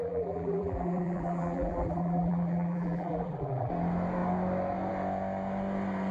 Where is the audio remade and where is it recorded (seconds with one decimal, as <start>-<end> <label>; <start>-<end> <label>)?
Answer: 0.0-3.7 remade; 3.7-6.1 recorded